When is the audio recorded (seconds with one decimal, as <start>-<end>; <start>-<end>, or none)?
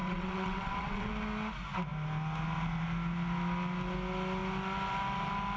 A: 1.1-5.6